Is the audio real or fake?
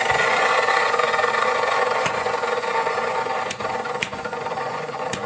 fake